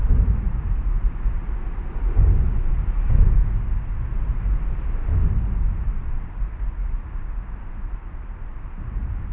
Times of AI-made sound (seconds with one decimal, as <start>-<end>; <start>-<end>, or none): 0.0-3.4; 4.3-5.1; 6.1-9.3